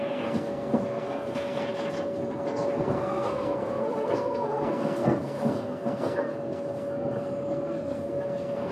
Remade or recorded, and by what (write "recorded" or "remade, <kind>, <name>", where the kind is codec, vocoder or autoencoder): remade, codec, SNAC